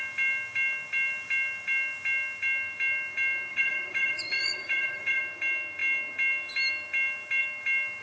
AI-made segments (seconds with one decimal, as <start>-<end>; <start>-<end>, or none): 3.5-5.2